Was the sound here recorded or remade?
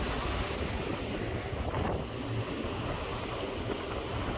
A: recorded